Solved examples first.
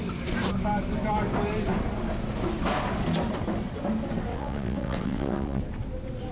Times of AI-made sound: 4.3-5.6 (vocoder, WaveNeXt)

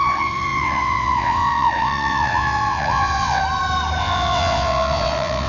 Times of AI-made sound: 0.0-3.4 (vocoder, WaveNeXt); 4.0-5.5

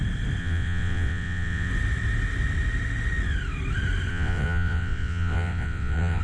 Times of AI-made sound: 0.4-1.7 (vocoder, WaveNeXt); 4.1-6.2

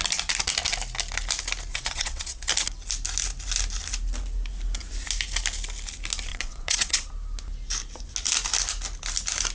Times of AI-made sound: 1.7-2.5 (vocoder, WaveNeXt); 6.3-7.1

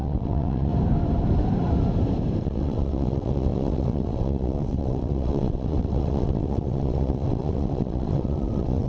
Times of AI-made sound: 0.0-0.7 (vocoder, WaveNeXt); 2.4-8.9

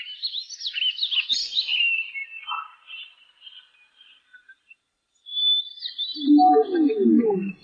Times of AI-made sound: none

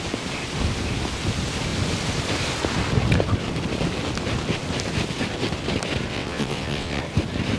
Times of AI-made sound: 6.1-7.0 (vocoder, WaveNeXt)